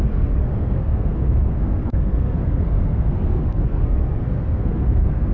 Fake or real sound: fake